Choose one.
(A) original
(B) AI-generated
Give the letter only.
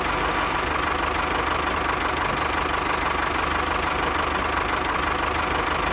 A